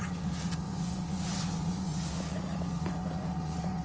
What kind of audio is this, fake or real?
fake